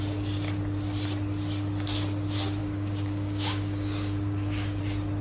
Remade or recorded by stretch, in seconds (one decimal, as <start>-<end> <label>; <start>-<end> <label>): 0.0-2.6 recorded; 2.6-4.8 remade; 4.8-5.2 recorded